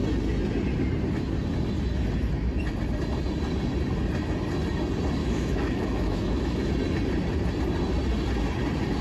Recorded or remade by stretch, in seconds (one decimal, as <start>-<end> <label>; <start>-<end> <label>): 0.0-5.2 recorded; 5.2-6.7 remade; 6.7-9.0 recorded